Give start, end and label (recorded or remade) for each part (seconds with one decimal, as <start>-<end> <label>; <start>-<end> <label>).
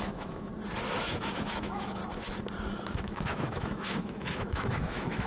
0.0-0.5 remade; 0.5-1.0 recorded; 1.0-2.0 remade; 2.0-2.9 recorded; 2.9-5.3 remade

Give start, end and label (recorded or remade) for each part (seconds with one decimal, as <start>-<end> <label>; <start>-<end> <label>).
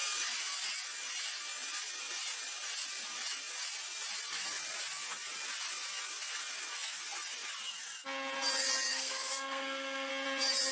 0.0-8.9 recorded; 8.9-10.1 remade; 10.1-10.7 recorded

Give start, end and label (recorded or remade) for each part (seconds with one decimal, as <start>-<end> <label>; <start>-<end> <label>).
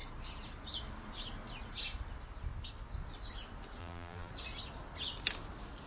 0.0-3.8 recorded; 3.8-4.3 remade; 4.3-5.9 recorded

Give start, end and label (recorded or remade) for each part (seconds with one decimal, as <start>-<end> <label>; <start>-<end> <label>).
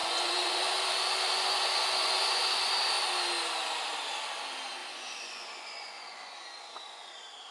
0.0-2.7 remade; 2.7-4.8 recorded; 4.8-7.1 remade; 7.1-7.5 recorded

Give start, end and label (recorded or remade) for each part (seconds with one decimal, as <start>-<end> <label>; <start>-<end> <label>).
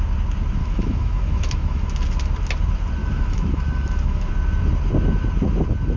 0.0-0.6 recorded; 0.6-1.9 remade; 1.9-3.0 recorded; 3.0-4.3 remade; 4.3-6.0 recorded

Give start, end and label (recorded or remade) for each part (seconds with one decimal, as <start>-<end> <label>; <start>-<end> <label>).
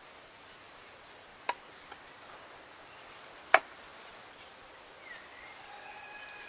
0.0-1.3 recorded; 1.3-2.0 remade; 2.0-3.9 recorded; 3.9-4.8 remade; 4.8-6.5 recorded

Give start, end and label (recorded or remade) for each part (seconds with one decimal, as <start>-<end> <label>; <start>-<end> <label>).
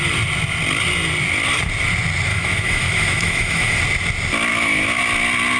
0.0-2.3 recorded; 2.3-3.8 remade; 3.8-4.5 recorded; 4.5-5.0 remade; 5.0-5.6 recorded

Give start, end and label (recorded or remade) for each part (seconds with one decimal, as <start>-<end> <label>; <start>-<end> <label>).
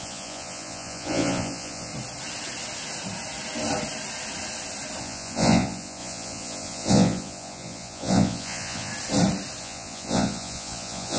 0.0-1.9 remade; 1.9-5.0 recorded; 5.0-8.9 remade; 8.9-9.6 recorded; 9.6-11.2 remade